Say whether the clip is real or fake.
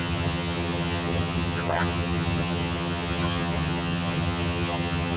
fake